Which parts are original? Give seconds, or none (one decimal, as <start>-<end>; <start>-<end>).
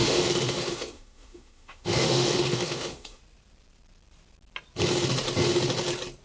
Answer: 3.2-6.2